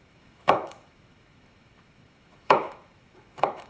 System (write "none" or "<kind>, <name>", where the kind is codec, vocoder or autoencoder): autoencoder, DAC-VAE